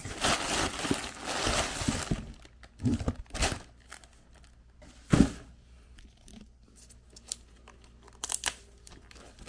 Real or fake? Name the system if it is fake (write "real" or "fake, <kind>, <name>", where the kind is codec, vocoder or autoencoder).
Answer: real